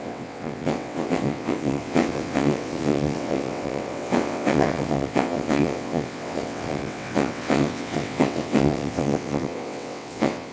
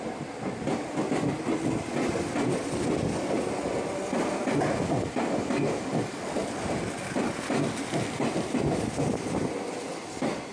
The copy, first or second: first